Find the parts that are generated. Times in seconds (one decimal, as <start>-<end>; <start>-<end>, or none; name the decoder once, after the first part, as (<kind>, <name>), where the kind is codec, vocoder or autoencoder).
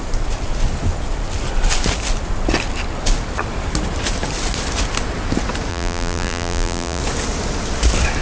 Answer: 5.7-7.0 (vocoder, BigVGAN v2)